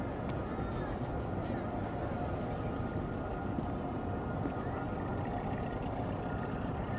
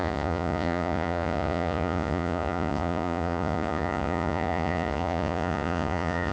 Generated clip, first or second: second